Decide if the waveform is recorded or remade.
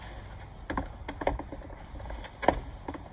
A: recorded